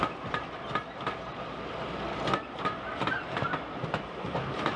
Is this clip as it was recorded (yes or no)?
yes